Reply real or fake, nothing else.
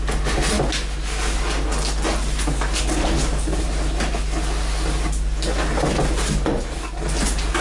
real